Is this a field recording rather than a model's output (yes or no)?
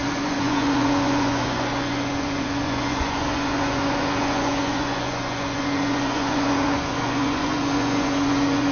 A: no